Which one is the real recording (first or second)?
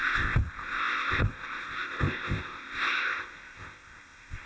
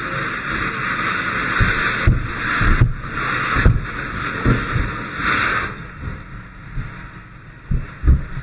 second